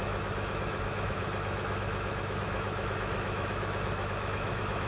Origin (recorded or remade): remade